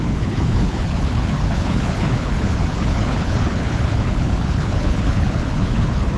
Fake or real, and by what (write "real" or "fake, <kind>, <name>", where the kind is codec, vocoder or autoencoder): fake, codec, HILCodec